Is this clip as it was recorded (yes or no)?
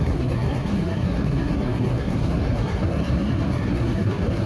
no